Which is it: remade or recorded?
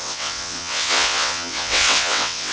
remade